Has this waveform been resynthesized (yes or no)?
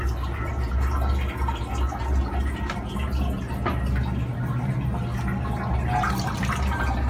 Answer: no